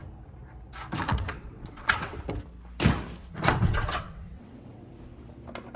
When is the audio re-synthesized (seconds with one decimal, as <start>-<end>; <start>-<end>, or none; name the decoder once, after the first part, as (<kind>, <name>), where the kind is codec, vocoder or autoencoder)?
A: 1.1-2.2 (vocoder, WaveNeXt); 3.2-4.9